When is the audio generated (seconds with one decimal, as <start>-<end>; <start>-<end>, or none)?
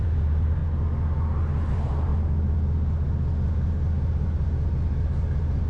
0.0-0.6; 1.7-2.1